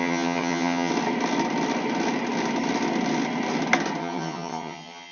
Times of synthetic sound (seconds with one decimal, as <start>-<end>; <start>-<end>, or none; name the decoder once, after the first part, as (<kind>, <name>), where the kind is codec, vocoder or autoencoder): 0.0-0.9 (vocoder, HiFi-GAN); 4.0-5.1